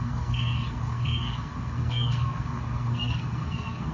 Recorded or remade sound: remade